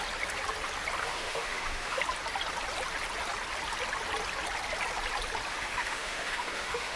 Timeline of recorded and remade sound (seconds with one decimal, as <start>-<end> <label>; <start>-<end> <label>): 0.0-1.0 recorded; 1.0-2.0 remade; 2.0-5.5 recorded; 5.5-7.0 remade